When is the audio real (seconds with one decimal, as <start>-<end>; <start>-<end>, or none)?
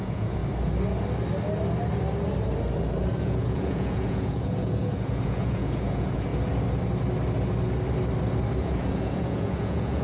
0.4-3.2; 6.3-8.6